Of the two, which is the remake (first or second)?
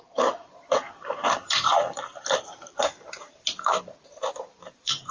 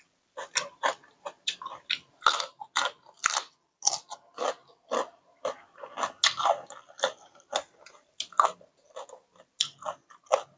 first